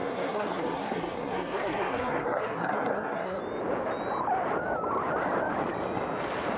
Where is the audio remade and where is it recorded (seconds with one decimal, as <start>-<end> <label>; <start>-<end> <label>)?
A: 0.0-3.4 remade; 3.4-6.6 recorded